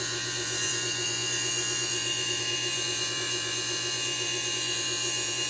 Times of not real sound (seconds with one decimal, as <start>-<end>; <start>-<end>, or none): 0.0-5.5